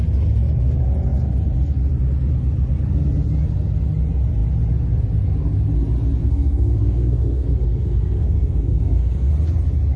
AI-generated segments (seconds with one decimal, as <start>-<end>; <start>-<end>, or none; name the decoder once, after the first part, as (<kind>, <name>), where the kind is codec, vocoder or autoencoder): 6.2-9.3 (codec, SNAC)